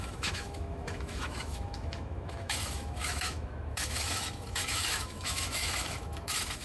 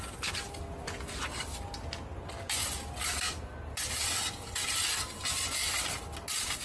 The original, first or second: second